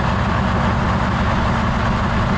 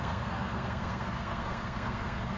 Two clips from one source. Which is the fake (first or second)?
second